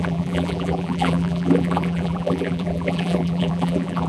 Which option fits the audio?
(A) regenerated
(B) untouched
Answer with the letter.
A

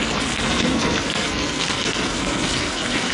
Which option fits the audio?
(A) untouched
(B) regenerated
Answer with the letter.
B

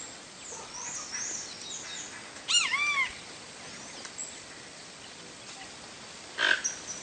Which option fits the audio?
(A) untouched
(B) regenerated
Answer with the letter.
A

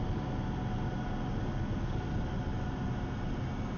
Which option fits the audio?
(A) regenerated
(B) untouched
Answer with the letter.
B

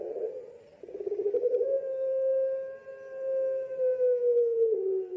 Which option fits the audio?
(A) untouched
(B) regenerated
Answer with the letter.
A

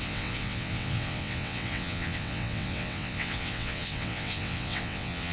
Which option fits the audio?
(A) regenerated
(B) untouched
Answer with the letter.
A